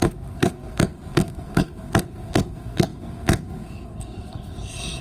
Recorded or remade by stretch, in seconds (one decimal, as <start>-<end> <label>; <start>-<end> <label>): 0.0-5.0 remade

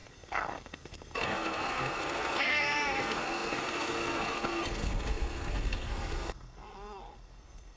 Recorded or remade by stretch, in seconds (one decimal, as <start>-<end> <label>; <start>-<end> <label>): 0.0-7.8 remade

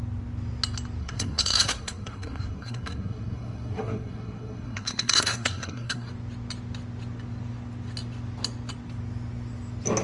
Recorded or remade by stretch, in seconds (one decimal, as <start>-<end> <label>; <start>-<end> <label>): 0.0-1.0 recorded; 1.0-6.1 remade; 6.1-10.0 recorded

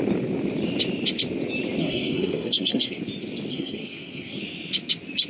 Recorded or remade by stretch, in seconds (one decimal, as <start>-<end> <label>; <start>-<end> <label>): 0.0-1.8 recorded; 1.8-3.0 remade; 3.0-3.5 recorded; 3.5-4.4 remade; 4.4-5.3 recorded

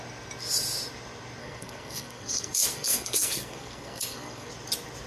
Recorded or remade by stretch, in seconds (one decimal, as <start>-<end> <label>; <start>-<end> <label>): 0.0-1.4 recorded; 1.4-4.5 remade; 4.5-5.1 recorded

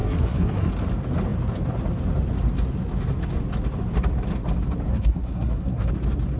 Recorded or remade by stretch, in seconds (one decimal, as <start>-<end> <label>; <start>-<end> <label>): 0.0-0.7 remade; 0.7-4.9 recorded; 4.9-5.9 remade; 5.9-6.4 recorded

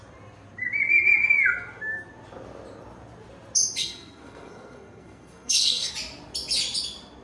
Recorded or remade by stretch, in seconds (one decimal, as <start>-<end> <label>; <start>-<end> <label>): 0.0-3.8 recorded; 3.8-5.9 remade; 5.9-7.2 recorded